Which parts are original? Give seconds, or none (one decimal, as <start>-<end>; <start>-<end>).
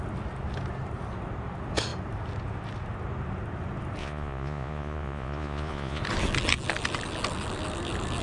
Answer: 0.0-4.0; 6.0-8.2